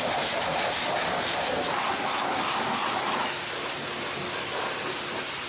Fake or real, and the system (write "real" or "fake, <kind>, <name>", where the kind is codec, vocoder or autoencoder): real